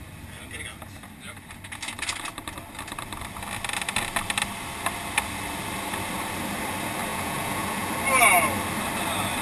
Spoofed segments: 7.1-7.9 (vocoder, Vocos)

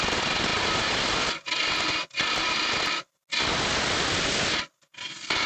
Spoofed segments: none

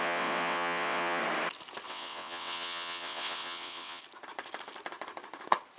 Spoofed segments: 0.0-1.2 (vocoder, WaveNeXt); 1.9-4.0

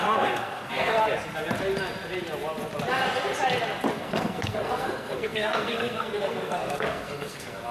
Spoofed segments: 0.0-1.0 (codec, SNAC); 3.9-7.7

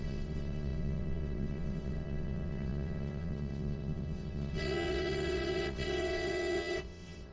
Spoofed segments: 0.0-7.3 (vocoder, WaveNeXt)

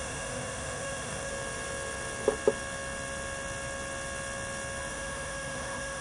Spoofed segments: 0.0-1.3 (autoencoder, DAC-VAE); 4.9-6.0

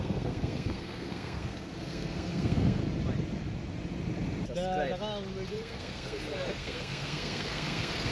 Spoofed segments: 0.0-2.8 (codec, SNAC); 5.5-8.1